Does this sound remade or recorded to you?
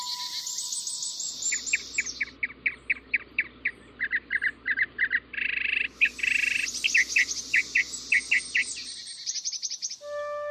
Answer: recorded